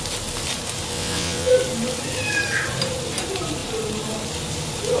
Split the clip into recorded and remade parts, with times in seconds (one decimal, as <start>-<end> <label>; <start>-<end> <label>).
0.0-0.9 recorded; 0.9-1.5 remade; 1.5-5.0 recorded